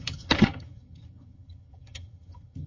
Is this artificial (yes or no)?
yes